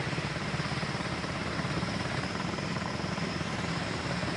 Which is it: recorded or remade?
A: remade